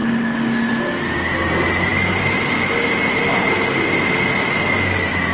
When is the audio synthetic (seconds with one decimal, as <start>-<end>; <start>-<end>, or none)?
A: 0.0-0.7